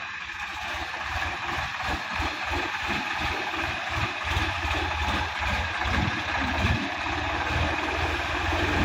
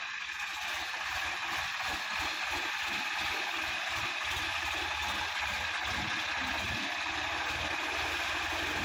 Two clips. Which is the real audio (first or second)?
second